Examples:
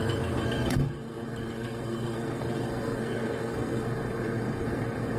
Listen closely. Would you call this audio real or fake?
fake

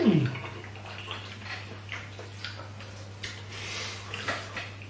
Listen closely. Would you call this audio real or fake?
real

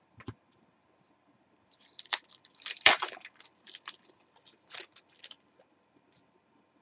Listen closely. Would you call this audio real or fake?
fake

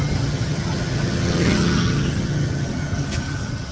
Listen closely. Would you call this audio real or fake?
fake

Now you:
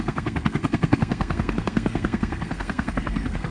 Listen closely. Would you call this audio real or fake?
fake